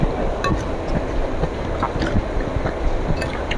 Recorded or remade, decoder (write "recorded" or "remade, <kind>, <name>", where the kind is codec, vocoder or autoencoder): recorded